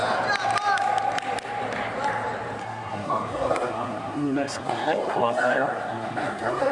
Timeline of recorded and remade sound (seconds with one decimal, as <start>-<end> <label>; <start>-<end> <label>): 0.0-2.6 recorded; 2.6-6.7 remade

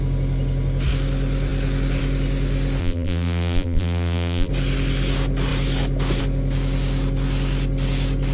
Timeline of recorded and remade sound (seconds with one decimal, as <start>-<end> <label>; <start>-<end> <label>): 0.0-2.8 recorded; 2.8-4.5 remade; 4.5-8.3 recorded

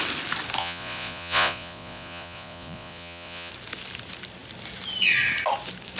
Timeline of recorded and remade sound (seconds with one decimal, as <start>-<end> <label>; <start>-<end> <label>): 0.0-0.6 recorded; 0.6-3.5 remade; 3.5-6.0 recorded

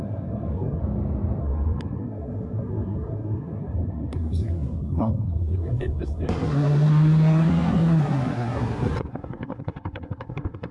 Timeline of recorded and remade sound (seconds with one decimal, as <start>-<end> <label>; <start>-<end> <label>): 0.0-0.8 remade; 0.8-1.4 recorded; 1.4-10.7 remade

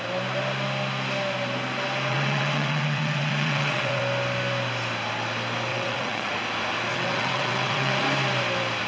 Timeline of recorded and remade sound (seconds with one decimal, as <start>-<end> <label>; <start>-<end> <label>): 0.0-2.1 recorded; 2.1-4.0 remade; 4.0-5.7 recorded; 5.7-6.3 remade; 6.3-6.9 recorded; 6.9-7.9 remade; 7.9-8.9 recorded

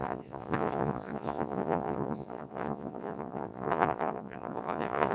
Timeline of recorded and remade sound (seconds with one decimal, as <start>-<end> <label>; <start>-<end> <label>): 0.0-5.1 remade

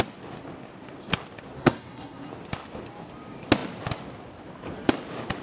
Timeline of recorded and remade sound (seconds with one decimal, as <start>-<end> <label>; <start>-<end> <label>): 0.0-1.6 recorded; 1.6-2.3 remade; 2.3-5.4 recorded

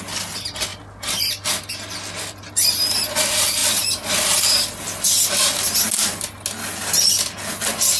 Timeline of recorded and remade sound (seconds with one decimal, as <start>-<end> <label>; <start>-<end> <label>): 0.0-8.0 recorded